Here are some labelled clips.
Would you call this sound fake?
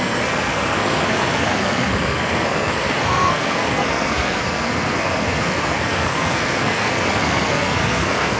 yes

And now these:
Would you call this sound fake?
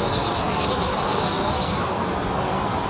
yes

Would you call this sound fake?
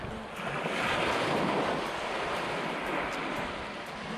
no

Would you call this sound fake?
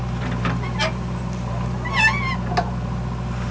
no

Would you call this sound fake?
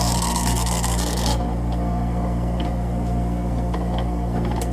yes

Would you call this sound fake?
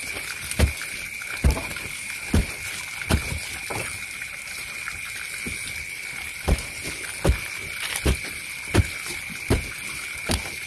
no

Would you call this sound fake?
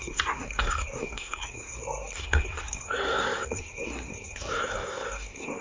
yes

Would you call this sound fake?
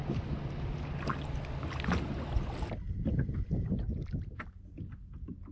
no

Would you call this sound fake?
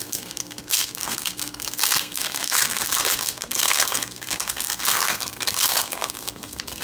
yes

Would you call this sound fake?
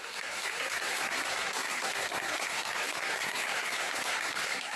yes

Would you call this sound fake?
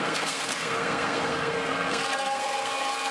yes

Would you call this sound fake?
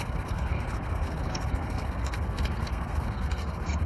yes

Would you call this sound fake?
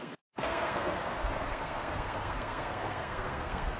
yes